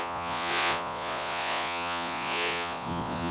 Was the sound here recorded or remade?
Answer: remade